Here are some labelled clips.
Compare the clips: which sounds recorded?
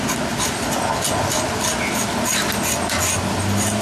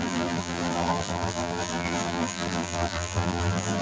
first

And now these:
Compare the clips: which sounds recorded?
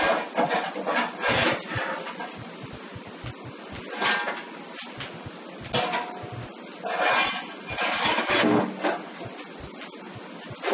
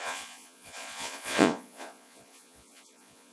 first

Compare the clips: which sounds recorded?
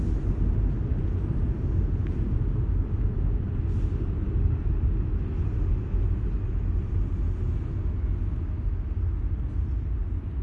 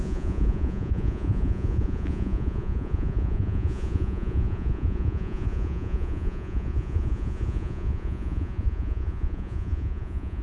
first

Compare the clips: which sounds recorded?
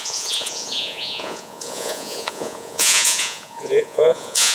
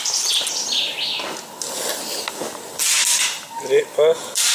second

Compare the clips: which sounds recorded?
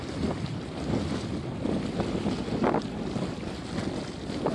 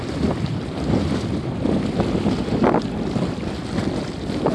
first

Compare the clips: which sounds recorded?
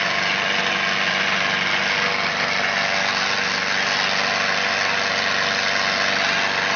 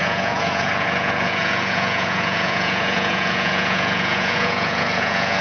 first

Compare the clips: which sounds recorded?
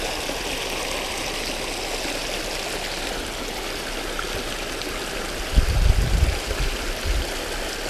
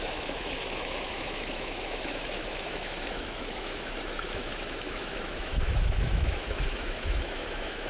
first